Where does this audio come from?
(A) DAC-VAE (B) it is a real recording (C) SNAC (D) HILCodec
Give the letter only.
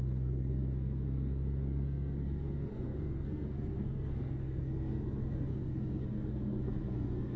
C